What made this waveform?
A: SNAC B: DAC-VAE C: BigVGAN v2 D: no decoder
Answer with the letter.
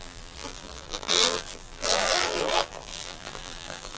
C